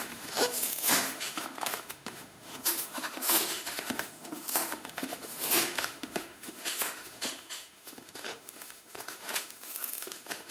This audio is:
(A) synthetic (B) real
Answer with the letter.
A